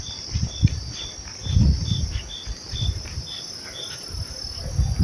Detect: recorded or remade remade